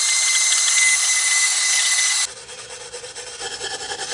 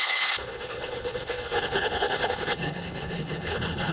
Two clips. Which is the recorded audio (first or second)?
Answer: first